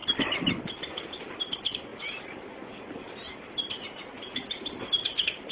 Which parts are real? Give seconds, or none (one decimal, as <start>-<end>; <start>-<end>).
0.0-5.5